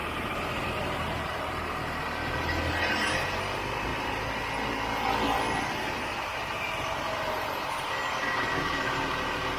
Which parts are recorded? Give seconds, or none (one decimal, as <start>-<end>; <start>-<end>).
1.6-3.9; 4.4-6.3; 7.9-9.6